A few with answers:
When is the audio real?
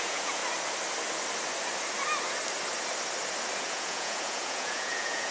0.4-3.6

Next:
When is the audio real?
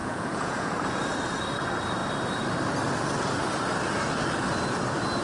0.7-5.2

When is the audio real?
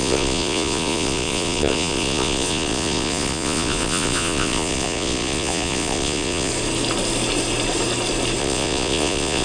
6.5-8.4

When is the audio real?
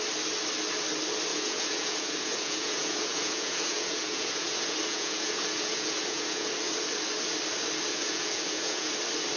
0.0-1.3; 6.5-7.9; 8.9-9.4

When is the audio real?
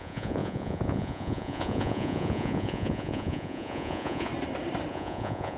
4.3-4.9